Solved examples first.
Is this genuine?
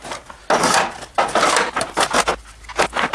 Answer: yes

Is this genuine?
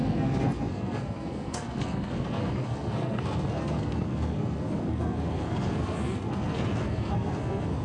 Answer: no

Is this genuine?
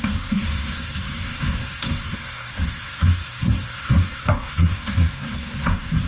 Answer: no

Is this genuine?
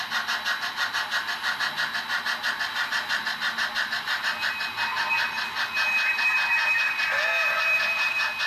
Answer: yes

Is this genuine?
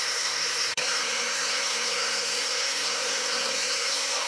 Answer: no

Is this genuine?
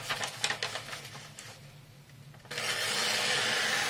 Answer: yes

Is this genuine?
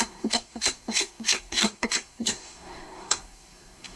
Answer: no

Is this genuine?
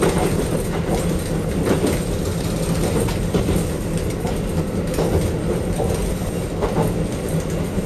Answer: yes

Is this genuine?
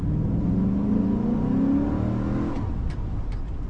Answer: yes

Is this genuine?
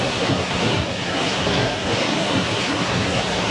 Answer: no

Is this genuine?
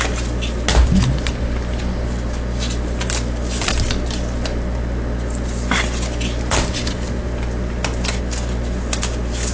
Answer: yes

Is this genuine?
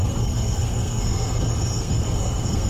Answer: no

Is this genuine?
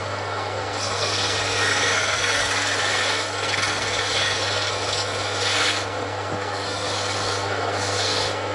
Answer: no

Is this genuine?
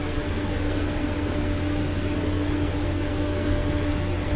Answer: no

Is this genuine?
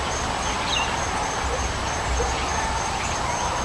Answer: yes